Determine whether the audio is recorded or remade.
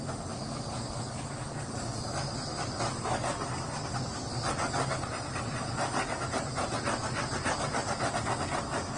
recorded